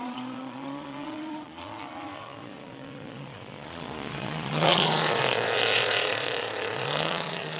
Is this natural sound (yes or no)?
no